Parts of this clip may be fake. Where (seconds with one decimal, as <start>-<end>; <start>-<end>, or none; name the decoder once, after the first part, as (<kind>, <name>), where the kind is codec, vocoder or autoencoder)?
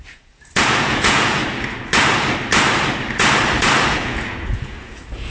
0.0-1.4 (vocoder, Vocos); 3.9-5.3